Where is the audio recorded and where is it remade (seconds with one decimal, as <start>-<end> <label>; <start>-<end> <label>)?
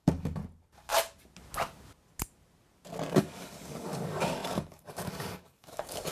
0.0-0.4 remade; 0.4-3.1 recorded; 3.1-6.1 remade